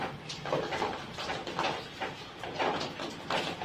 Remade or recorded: recorded